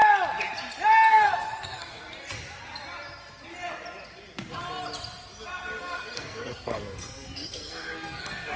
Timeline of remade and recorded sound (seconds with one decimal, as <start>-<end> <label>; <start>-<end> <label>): 0.0-1.1 recorded; 1.1-2.0 remade; 2.0-5.8 recorded; 5.8-8.6 remade